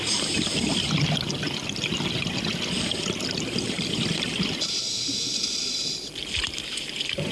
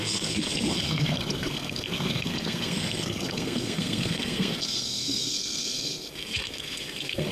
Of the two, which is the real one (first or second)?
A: first